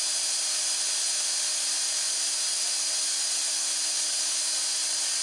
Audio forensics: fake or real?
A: real